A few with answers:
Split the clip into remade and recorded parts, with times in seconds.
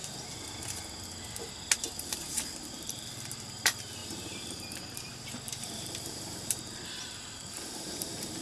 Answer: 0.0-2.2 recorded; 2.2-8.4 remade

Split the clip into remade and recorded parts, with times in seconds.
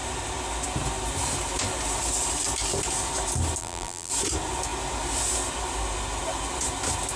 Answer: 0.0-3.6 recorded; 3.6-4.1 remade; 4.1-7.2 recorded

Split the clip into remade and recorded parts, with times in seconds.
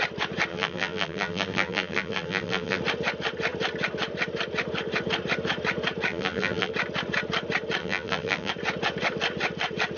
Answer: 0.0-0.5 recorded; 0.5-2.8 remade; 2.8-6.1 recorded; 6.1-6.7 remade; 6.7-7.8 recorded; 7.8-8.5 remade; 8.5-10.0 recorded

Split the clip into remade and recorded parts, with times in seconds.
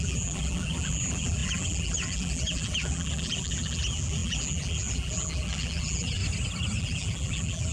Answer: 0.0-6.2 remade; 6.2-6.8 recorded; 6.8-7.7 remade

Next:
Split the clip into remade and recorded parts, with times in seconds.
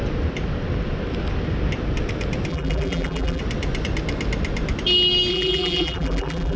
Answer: 0.0-2.5 recorded; 2.5-3.4 remade; 3.4-5.3 recorded; 5.3-6.6 remade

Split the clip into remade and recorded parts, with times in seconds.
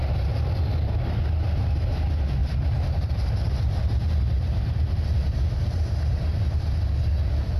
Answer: 0.0-2.4 recorded; 2.4-5.9 remade; 5.9-7.6 recorded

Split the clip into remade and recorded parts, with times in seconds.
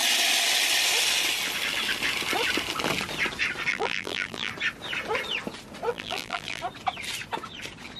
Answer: 0.0-3.7 recorded; 3.7-4.5 remade; 4.5-5.9 recorded; 5.9-6.6 remade; 6.6-8.0 recorded